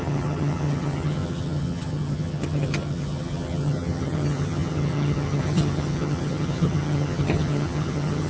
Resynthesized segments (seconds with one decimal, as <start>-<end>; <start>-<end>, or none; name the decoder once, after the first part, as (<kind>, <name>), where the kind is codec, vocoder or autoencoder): 0.0-8.3 (vocoder, HiFi-GAN)